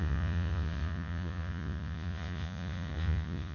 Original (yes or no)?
no